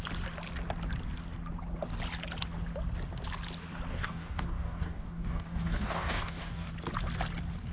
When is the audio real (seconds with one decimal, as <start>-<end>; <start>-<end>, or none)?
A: 0.0-3.9; 6.7-7.7